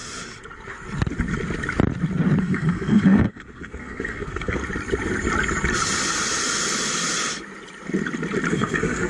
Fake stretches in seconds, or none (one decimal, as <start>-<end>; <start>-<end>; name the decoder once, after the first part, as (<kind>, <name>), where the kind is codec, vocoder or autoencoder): 2.4-4.6 (codec, SNAC); 8.5-9.1